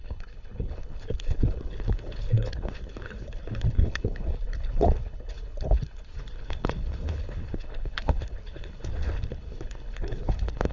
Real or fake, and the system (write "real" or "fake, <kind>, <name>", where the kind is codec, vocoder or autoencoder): fake, codec, HILCodec